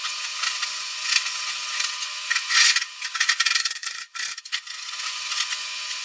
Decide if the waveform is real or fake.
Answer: fake